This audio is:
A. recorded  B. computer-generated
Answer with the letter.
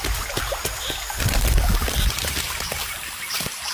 B